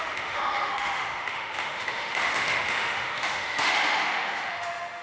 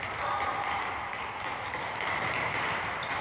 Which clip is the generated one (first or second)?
first